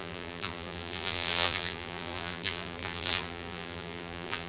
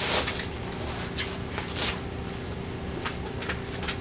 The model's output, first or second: first